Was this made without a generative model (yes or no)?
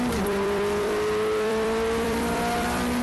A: no